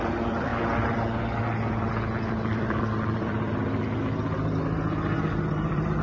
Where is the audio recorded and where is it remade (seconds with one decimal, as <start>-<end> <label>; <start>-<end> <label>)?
0.0-0.5 remade; 0.5-2.3 recorded; 2.3-4.0 remade; 4.0-5.5 recorded; 5.5-6.0 remade